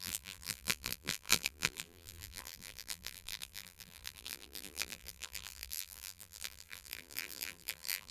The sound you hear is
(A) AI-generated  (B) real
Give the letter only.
A